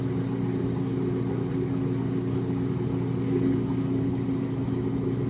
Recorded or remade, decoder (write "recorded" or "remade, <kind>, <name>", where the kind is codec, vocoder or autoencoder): recorded